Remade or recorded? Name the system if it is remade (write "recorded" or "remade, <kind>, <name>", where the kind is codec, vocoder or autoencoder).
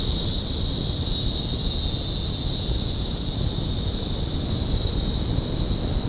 recorded